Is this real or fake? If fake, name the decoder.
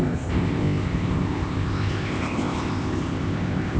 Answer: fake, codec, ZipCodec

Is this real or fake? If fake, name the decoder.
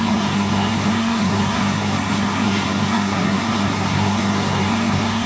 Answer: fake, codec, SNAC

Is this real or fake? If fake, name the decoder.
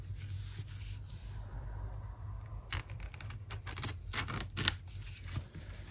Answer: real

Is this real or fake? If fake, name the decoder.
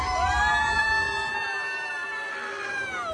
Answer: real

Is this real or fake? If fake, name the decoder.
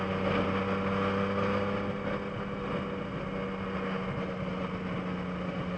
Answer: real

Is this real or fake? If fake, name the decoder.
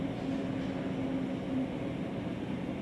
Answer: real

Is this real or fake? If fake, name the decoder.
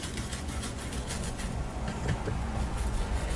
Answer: fake, vocoder, Vocos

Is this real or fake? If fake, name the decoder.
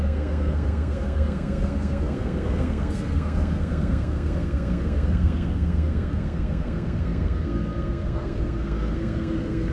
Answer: fake, codec, SNAC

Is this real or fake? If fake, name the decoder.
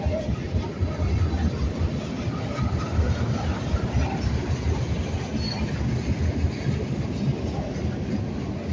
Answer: real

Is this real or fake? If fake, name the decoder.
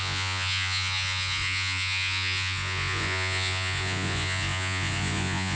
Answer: fake, vocoder, Vocos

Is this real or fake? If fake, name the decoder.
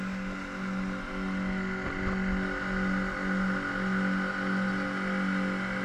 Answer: real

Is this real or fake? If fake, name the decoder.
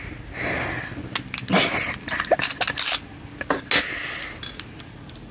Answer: real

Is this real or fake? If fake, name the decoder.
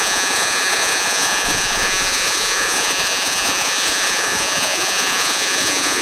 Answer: fake, vocoder, Vocos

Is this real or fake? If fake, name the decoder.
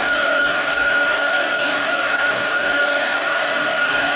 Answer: fake, codec, DAC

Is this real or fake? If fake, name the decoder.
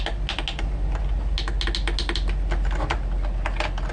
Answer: real